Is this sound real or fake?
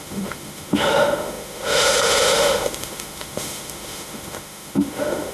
fake